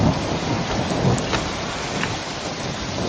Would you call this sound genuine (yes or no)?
yes